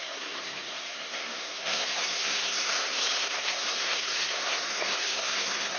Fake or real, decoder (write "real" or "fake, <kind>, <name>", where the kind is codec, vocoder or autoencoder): fake, codec, SNAC